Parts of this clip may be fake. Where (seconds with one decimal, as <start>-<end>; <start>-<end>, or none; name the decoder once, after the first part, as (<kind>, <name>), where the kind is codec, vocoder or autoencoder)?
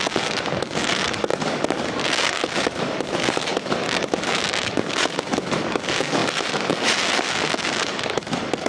0.0-8.7 (codec, DAC)